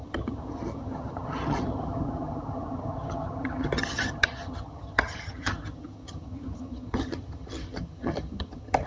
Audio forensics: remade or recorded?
remade